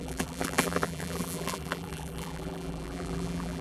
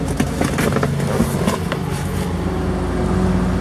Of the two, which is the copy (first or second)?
first